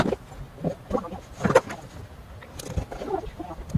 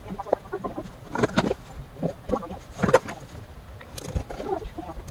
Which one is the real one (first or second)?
first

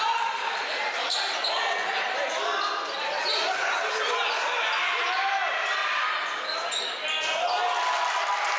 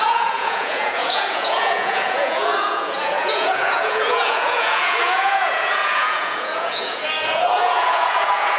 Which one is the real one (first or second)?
first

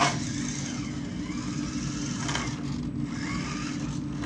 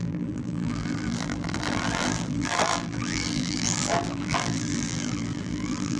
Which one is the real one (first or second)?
first